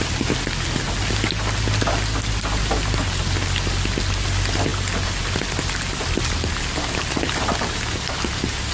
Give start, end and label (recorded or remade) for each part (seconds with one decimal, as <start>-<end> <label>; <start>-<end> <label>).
0.0-8.7 recorded